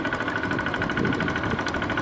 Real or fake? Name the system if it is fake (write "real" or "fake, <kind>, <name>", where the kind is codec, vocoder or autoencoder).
real